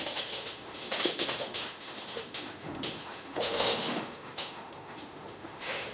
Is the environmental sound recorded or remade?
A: remade